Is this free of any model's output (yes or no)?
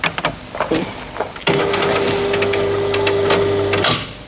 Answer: yes